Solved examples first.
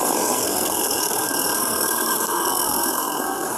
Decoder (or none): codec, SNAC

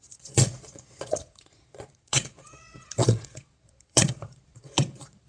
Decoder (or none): vocoder, Vocos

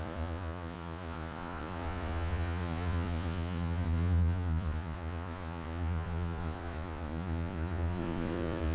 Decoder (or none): vocoder, Vocos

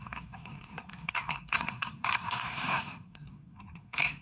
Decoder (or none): codec, SNAC